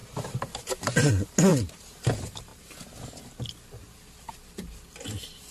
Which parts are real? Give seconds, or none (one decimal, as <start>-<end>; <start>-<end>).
1.1-1.5; 2.1-5.5